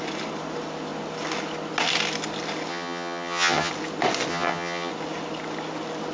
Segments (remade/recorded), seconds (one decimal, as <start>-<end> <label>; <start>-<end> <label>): 0.0-2.7 recorded; 2.7-3.7 remade; 3.7-4.3 recorded; 4.3-4.9 remade; 4.9-6.1 recorded